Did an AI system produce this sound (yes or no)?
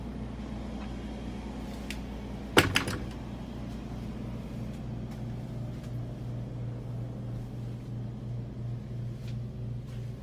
no